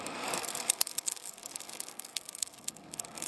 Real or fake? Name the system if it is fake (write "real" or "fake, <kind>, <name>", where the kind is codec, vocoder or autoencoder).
fake, codec, SNAC